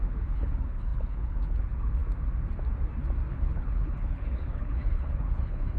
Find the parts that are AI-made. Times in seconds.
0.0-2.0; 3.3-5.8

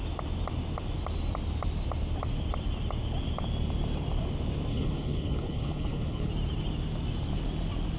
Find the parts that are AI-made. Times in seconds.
4.7-6.3

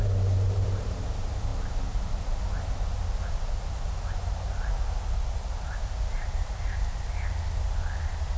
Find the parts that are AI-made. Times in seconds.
none

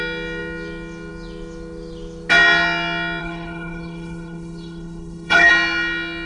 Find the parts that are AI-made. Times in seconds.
3.2-5.5

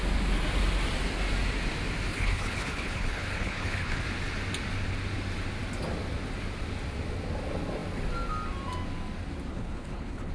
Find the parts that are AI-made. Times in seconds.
2.1-4.0; 9.5-10.3